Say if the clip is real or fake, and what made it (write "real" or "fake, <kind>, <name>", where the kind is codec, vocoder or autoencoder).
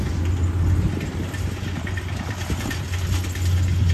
real